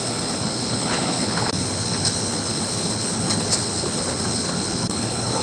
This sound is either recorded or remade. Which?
remade